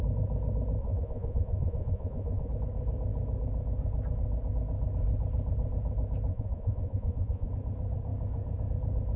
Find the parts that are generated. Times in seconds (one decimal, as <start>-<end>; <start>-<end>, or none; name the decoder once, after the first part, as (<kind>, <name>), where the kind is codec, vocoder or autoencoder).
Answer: 0.8-2.5 (vocoder, Vocos); 6.3-7.5